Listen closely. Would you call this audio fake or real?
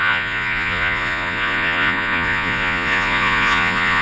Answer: fake